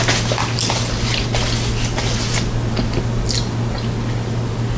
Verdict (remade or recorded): recorded